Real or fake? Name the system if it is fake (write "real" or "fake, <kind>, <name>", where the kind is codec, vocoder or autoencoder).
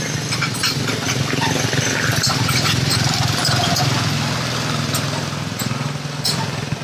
real